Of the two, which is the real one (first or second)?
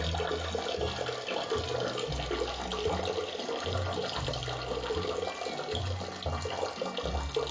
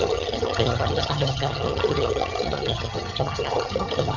first